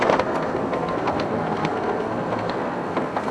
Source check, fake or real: fake